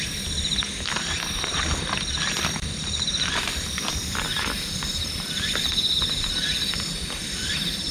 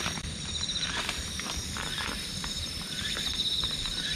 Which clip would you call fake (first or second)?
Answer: second